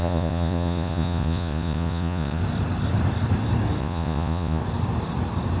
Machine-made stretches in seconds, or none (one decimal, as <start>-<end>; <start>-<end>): 0.0-2.4; 3.8-4.6